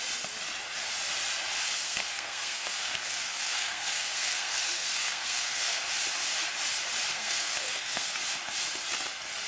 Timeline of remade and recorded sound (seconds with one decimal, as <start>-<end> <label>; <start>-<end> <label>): 0.0-1.6 recorded; 1.6-5.8 remade; 5.8-7.1 recorded; 7.1-8.1 remade; 8.1-9.5 recorded